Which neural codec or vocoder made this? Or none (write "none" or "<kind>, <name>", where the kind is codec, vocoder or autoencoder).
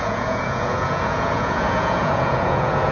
vocoder, Vocos